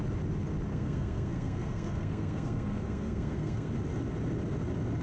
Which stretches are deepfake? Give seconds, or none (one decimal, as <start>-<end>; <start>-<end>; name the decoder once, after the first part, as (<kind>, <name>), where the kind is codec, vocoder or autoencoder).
0.7-3.7 (codec, SNAC)